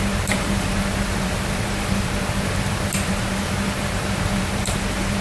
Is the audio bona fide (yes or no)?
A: no